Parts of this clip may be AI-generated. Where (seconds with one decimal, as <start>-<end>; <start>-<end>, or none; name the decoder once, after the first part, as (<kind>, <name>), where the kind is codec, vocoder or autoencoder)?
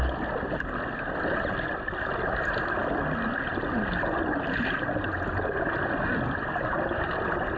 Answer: 2.8-7.6 (vocoder, BigVGAN v2)